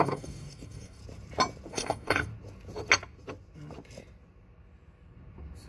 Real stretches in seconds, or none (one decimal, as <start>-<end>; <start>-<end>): 1.0-1.7; 2.3-5.7